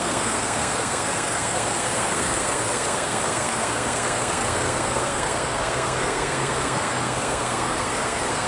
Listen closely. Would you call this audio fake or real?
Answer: fake